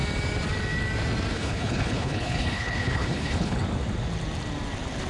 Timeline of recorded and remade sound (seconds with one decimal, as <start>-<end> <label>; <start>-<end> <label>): 0.0-1.3 recorded; 1.3-3.6 remade; 3.6-5.1 recorded